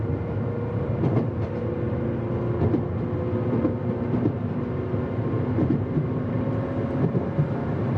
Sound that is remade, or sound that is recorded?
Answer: recorded